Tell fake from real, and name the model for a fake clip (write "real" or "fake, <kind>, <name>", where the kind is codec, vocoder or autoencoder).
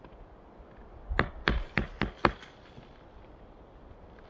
real